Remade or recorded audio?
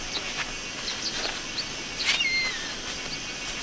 recorded